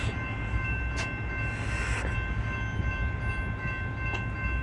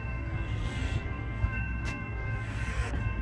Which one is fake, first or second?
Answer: second